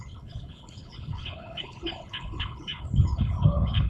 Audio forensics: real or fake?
fake